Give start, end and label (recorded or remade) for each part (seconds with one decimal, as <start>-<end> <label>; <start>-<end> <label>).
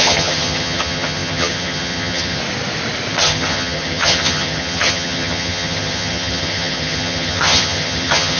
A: 0.0-2.4 remade; 2.4-3.1 recorded; 3.1-8.4 remade